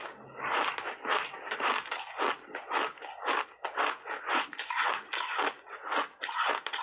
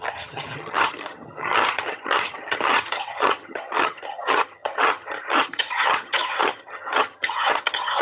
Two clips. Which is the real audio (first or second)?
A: first